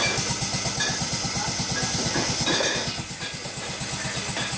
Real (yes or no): yes